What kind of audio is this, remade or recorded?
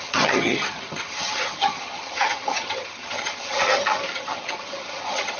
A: remade